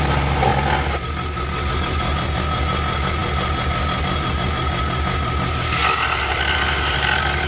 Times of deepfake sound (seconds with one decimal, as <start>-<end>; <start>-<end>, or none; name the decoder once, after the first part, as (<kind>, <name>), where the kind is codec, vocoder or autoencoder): none